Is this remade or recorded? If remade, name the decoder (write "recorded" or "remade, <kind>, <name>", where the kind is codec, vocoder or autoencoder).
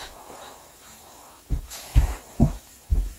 remade, autoencoder, DAC-VAE